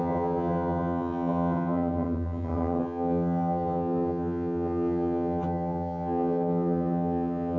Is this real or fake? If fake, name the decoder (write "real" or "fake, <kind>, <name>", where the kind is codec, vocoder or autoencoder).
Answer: fake, vocoder, HiFi-GAN